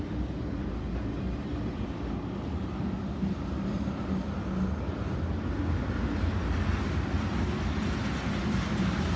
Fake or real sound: real